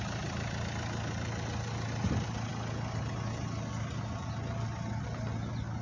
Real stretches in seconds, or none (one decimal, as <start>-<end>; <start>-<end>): 0.0-5.8